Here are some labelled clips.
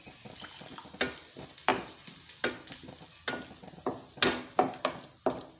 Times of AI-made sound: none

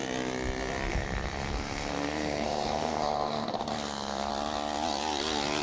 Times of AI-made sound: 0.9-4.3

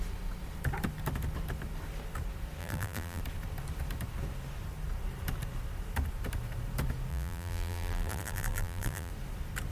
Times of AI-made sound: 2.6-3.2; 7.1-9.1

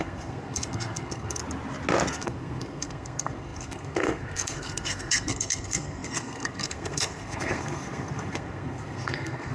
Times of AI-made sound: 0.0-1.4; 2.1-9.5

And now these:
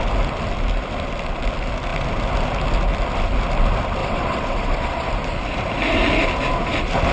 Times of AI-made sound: 4.0-5.1

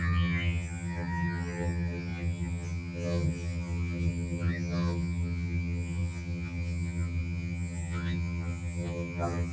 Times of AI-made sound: 0.0-9.5

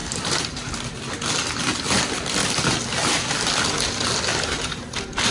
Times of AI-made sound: 0.0-1.1; 4.3-5.3

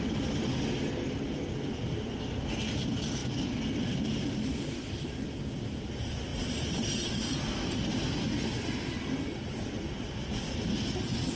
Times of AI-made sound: none